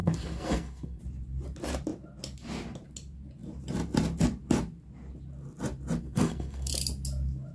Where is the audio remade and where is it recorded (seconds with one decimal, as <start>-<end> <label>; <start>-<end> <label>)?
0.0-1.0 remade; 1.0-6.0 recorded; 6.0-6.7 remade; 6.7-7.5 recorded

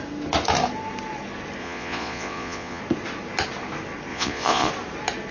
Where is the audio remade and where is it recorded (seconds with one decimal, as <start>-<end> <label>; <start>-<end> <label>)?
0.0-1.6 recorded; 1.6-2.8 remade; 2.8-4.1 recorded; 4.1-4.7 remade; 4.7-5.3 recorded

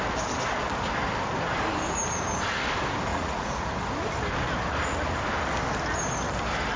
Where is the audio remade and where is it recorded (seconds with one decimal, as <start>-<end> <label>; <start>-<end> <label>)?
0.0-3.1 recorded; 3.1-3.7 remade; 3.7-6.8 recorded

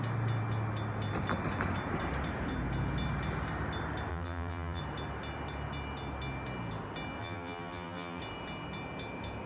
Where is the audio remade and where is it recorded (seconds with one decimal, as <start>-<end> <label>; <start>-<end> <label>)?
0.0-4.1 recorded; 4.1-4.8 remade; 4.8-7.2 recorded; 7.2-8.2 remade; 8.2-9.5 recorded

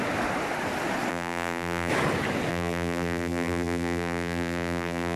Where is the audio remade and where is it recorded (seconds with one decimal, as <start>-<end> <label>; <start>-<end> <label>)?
0.0-1.1 recorded; 1.1-1.9 remade; 1.9-2.5 recorded; 2.5-5.2 remade

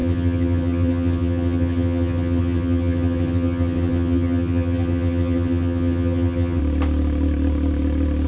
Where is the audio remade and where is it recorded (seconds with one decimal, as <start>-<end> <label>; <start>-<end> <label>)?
0.0-6.6 remade; 6.6-8.3 recorded

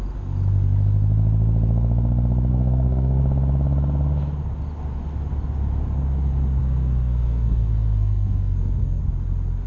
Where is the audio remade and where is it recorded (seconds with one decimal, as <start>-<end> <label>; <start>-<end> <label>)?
0.0-2.5 recorded; 2.5-3.2 remade; 3.2-6.6 recorded; 6.6-9.0 remade; 9.0-9.7 recorded